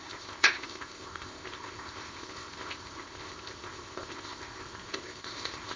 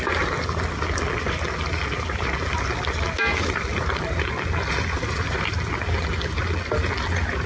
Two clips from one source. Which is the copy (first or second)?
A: first